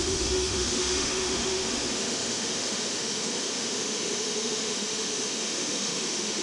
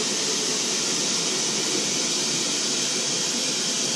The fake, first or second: first